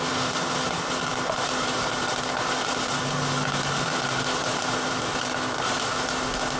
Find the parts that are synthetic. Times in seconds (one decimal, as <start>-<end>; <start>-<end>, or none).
none